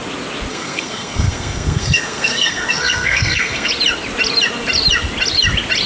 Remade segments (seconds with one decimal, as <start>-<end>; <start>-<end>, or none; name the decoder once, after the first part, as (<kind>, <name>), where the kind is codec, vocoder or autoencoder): 0.5-3.7 (codec, SNAC)